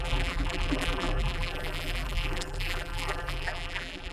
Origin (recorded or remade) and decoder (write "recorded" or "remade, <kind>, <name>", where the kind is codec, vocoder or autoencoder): remade, vocoder, BigVGAN v2